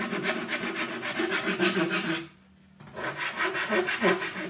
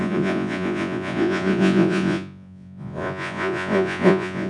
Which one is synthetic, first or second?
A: second